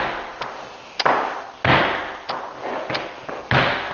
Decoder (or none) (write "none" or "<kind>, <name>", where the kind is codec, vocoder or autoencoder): none